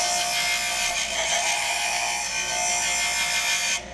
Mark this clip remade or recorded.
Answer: recorded